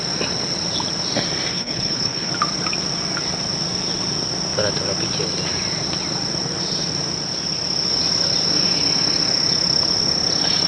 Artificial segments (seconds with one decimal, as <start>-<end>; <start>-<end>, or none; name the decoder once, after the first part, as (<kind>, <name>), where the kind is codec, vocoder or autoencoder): 1.5-2.3 (codec, HILCodec)